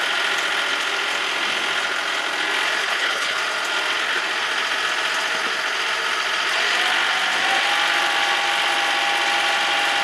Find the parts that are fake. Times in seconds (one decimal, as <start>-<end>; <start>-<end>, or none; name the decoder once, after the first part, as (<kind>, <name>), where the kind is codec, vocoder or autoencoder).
2.8-3.4 (codec, HILCodec)